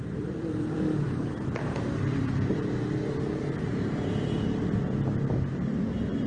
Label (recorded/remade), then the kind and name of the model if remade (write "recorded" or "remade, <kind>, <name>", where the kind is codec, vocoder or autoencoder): remade, vocoder, BigVGAN v2